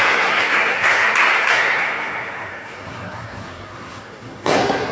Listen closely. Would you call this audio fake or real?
fake